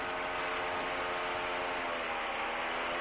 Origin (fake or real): real